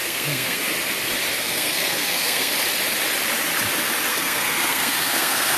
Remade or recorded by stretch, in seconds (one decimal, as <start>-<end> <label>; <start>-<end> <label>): 0.0-0.6 remade; 0.6-1.4 recorded; 1.4-2.5 remade; 2.5-4.1 recorded; 4.1-5.6 remade